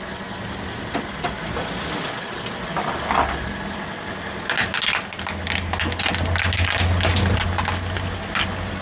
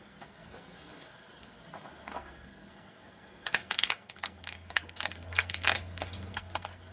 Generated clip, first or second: second